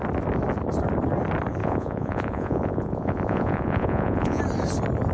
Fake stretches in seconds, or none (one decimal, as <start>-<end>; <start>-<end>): 1.6-4.4